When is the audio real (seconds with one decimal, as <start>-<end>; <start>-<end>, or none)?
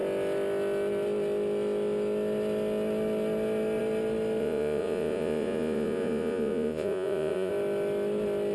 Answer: 0.0-4.4; 7.5-8.5